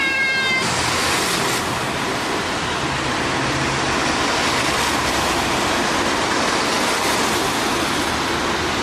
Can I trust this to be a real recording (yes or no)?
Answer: yes